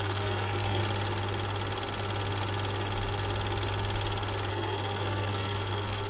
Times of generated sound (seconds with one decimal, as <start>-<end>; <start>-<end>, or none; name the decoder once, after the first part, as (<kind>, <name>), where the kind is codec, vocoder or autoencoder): 0.0-0.8 (codec, SNAC); 4.5-6.1